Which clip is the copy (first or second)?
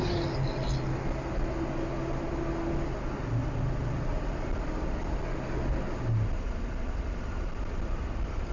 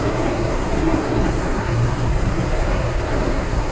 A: second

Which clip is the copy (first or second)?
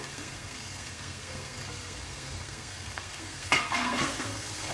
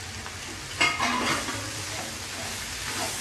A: first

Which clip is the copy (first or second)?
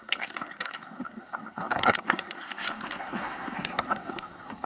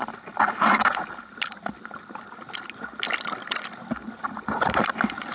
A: first